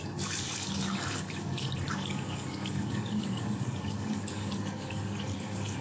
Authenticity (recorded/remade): remade